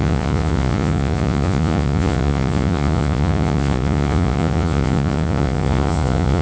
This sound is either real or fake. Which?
fake